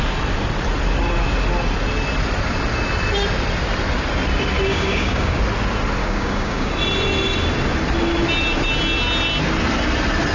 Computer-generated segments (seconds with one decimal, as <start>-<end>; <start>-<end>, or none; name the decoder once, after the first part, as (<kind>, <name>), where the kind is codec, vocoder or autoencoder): 4.7-5.4 (codec, DAC); 6.0-6.7